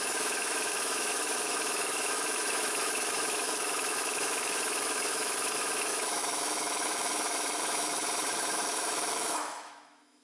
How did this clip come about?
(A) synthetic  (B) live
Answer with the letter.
A